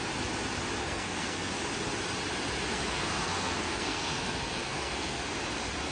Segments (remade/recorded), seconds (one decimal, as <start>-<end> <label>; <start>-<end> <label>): 0.0-0.8 recorded; 0.8-1.5 remade; 1.5-2.7 recorded; 2.7-5.2 remade; 5.2-5.9 recorded